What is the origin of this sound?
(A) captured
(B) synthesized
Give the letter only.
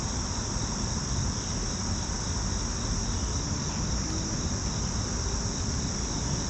A